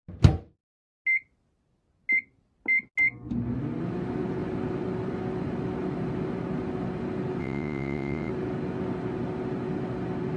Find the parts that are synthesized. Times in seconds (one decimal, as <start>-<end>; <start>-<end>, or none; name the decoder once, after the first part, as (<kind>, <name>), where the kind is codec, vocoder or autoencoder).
7.4-8.3 (vocoder, WaveNeXt)